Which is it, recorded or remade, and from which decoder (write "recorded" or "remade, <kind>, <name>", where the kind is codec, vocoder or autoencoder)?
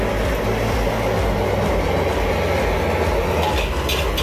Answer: recorded